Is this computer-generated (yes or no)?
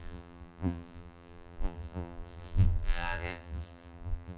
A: yes